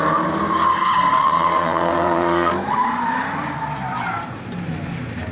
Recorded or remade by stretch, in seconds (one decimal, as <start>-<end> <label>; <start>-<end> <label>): 0.0-1.1 recorded; 1.1-2.5 remade; 2.5-5.3 recorded